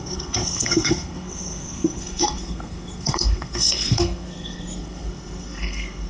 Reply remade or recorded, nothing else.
remade